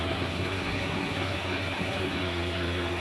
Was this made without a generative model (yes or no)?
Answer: no